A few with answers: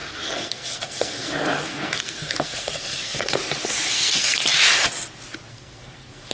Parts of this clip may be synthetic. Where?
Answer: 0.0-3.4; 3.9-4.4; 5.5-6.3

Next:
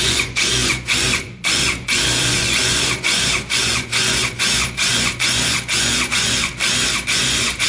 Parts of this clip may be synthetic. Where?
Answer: 0.0-6.5; 7.1-7.7

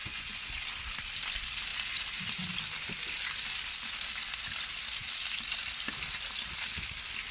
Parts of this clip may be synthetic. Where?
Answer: 0.0-0.5

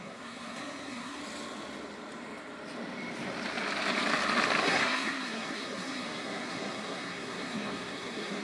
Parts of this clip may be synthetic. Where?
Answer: 0.0-1.2; 4.6-8.4

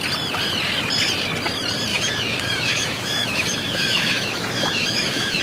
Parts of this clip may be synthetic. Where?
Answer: 1.9-5.4

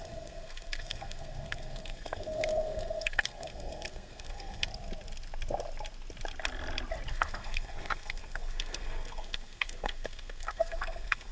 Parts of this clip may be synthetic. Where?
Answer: 0.0-4.7; 7.1-11.3